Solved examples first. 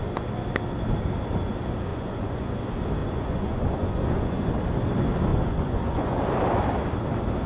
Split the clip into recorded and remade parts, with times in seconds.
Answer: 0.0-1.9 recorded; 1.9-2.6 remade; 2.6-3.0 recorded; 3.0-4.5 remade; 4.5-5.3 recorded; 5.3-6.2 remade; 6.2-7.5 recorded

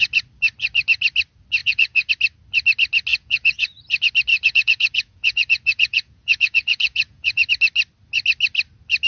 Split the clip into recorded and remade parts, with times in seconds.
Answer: 0.0-1.6 recorded; 1.6-2.1 remade; 2.1-3.1 recorded; 3.1-3.8 remade; 3.8-4.3 recorded; 4.3-7.5 remade; 7.5-9.1 recorded

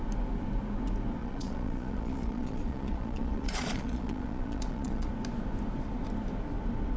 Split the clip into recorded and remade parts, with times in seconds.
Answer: 0.0-1.2 recorded; 1.2-5.1 remade; 5.1-7.0 recorded